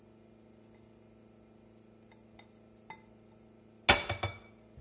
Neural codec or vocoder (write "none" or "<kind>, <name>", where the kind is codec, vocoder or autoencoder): none